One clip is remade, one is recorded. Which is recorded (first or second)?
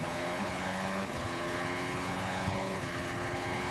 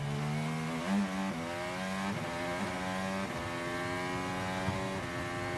second